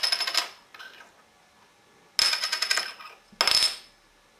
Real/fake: real